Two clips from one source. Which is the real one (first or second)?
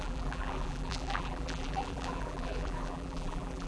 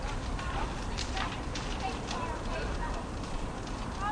second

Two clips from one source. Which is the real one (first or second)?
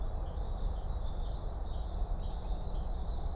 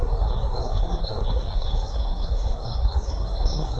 first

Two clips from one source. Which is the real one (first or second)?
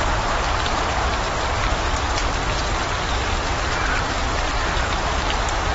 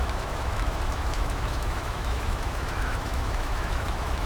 first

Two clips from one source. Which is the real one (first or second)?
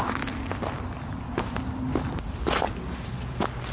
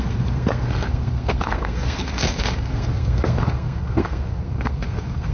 first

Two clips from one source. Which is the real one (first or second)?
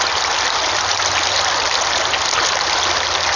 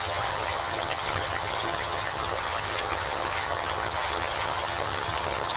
first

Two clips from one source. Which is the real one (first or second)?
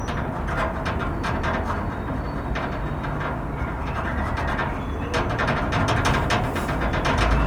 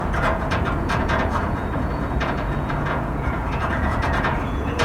first